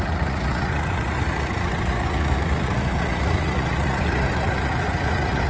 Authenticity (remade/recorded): remade